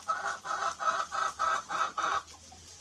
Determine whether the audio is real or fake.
real